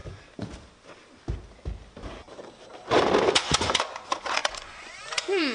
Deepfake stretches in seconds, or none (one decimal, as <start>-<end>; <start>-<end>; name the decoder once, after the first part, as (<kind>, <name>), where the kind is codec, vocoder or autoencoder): 3.3-5.5 (vocoder, Vocos)